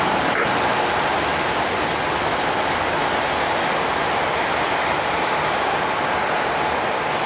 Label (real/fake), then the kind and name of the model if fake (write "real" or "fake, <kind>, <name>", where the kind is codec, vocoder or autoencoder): real